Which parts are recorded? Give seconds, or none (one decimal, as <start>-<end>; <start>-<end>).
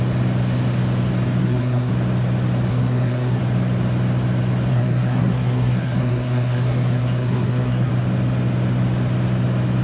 0.0-1.4; 1.9-2.7; 3.4-4.7; 7.9-9.8